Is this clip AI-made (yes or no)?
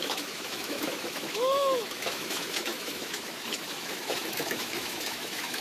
yes